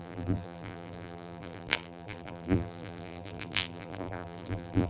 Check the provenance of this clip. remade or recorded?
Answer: remade